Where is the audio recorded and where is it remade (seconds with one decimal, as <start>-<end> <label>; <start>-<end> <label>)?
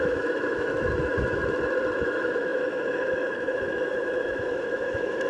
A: 0.0-1.4 remade; 1.4-2.0 recorded; 2.0-5.3 remade